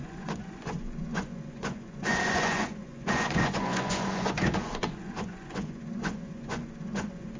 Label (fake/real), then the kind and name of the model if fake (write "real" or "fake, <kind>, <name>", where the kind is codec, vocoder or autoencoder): fake, vocoder, Vocos